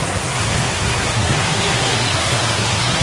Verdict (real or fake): fake